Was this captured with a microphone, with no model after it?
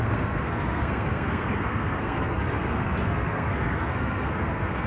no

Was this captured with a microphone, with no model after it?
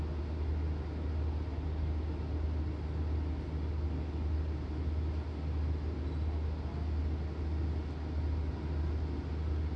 yes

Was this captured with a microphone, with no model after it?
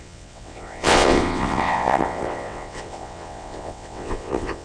no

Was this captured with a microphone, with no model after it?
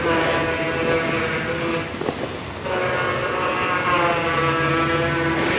yes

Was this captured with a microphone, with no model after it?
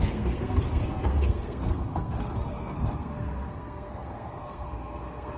no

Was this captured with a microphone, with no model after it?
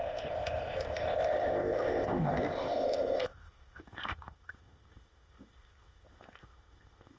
no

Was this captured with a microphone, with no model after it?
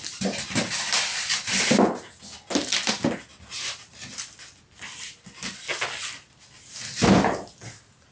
yes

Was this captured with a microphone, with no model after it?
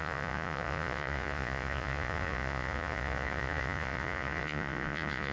no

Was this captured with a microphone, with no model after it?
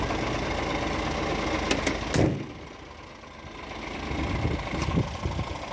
yes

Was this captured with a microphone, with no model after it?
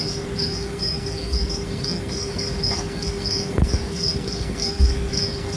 no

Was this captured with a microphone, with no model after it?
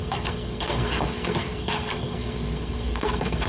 no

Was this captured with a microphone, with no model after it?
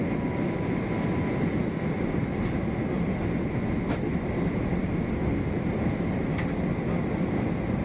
yes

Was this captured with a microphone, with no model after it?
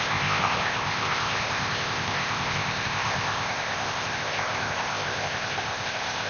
no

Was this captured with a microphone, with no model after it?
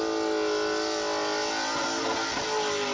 yes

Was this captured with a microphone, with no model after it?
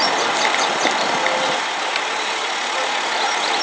yes